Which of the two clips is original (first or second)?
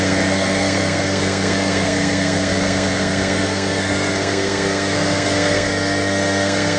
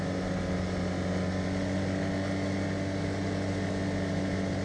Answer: second